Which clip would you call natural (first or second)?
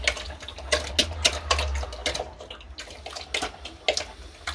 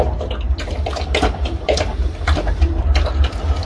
first